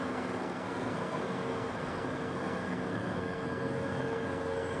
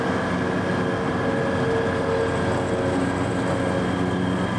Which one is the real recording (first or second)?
second